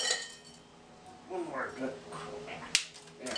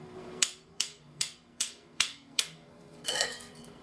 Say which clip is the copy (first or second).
second